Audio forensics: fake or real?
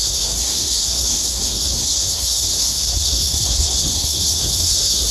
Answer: fake